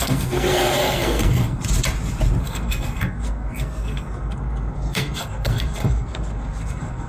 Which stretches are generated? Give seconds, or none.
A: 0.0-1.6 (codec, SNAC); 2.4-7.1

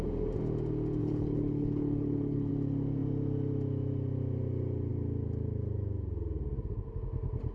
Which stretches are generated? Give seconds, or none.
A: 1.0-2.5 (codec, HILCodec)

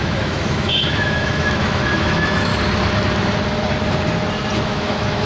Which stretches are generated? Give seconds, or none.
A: 0.0-2.5 (autoencoder, DAC-VAE); 4.6-5.3